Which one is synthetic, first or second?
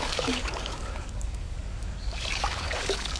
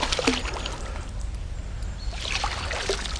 first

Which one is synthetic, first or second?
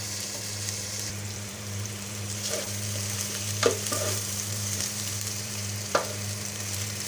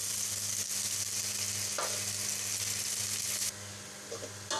first